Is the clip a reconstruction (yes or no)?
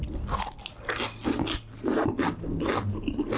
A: no